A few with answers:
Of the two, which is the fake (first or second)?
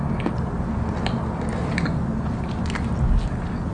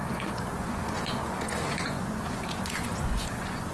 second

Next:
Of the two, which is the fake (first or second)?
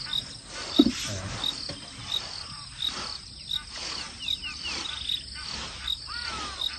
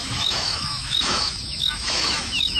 second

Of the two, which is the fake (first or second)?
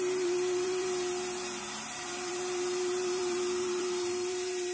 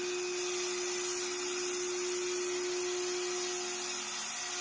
first